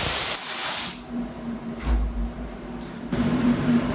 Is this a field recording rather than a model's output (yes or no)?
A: no